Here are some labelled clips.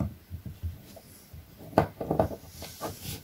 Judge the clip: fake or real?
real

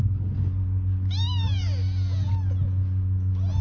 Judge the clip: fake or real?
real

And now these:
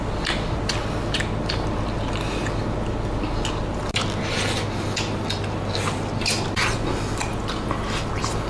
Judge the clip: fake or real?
real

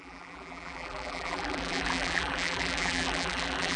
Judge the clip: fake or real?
fake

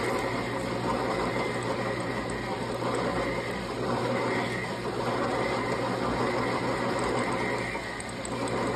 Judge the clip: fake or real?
real